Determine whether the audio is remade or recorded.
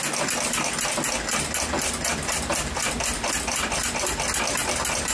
recorded